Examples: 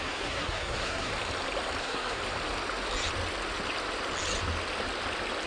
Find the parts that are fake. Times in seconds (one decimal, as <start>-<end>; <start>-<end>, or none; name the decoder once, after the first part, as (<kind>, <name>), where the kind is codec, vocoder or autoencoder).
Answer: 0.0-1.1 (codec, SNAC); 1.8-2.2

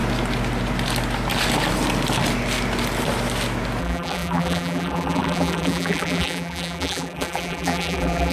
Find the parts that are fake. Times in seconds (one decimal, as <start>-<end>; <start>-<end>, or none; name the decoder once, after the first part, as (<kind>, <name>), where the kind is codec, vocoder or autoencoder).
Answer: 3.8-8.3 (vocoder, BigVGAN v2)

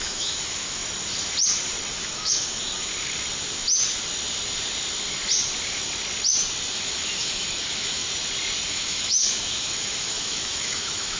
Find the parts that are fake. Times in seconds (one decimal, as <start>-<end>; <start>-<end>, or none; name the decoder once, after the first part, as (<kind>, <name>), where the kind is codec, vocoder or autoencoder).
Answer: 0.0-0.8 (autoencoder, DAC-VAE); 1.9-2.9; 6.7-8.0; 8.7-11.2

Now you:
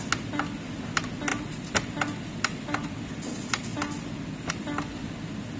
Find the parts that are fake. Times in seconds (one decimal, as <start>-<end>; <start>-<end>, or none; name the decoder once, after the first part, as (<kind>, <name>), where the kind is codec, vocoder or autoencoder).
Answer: none